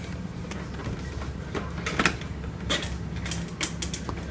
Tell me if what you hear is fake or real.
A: real